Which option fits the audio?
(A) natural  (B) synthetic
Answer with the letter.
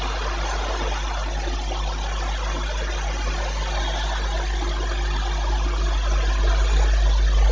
A